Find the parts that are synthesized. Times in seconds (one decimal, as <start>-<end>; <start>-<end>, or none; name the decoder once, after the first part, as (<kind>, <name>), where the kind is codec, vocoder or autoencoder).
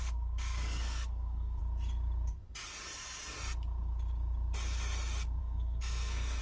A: 0.0-1.6 (codec, SNAC); 5.4-6.4